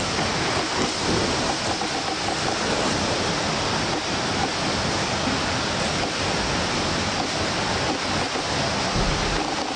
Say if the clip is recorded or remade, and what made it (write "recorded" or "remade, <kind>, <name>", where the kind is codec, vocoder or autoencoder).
recorded